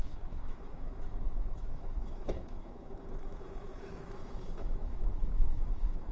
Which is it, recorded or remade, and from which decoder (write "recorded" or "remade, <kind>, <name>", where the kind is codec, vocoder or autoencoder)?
remade, autoencoder, DAC-VAE